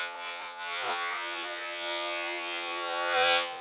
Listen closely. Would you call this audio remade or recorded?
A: remade